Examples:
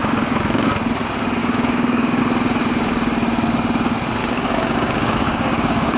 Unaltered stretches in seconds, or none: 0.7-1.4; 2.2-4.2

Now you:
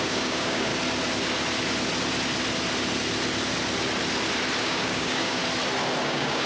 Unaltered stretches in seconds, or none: 0.7-4.6; 5.4-6.0

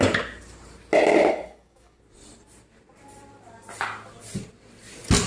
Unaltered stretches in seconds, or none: 0.0-1.3; 2.0-5.3

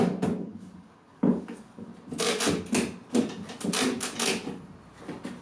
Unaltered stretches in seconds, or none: 1.9-5.4

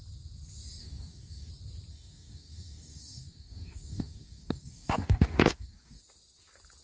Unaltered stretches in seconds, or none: 0.0-0.8; 1.5-1.9; 6.0-6.8

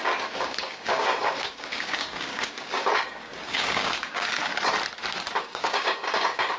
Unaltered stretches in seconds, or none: 4.5-5.4

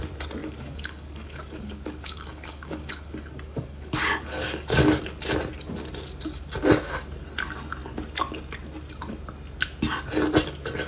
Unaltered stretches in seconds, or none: 0.0-0.4; 5.0-10.9